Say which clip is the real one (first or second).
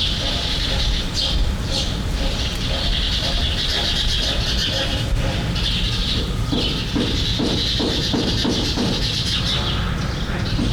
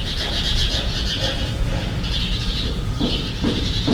first